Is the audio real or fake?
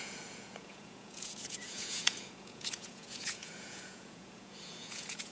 fake